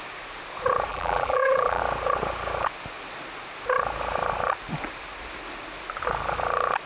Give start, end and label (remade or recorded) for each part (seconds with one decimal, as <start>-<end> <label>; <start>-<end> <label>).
0.0-0.9 recorded; 0.9-1.8 remade; 1.8-6.9 recorded

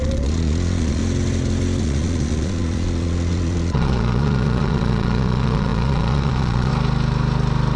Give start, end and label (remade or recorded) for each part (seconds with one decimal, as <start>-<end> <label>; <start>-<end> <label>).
0.0-1.0 remade; 1.0-1.8 recorded; 1.8-6.7 remade; 6.7-7.8 recorded

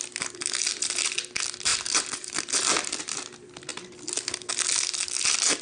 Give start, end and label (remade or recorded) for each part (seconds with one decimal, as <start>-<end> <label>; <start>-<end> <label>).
0.0-1.7 recorded; 1.7-3.0 remade; 3.0-5.6 recorded

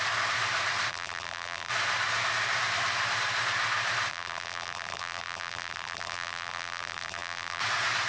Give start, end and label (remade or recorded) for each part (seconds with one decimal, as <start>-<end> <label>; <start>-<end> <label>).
0.0-0.9 recorded; 0.9-1.7 remade; 1.7-4.1 recorded; 4.1-7.6 remade; 7.6-8.1 recorded

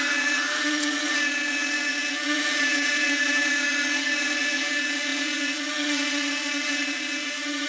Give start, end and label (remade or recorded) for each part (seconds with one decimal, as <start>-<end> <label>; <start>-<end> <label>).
0.0-7.7 remade

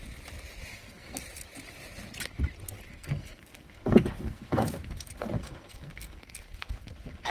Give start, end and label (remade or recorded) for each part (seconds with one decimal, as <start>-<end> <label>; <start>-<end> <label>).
0.0-0.7 recorded; 0.7-1.2 remade; 1.2-2.9 recorded; 2.9-7.3 remade